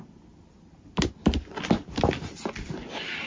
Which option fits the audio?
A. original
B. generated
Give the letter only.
A